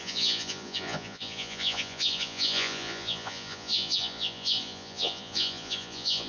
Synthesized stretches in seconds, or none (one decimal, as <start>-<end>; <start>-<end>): 0.0-6.3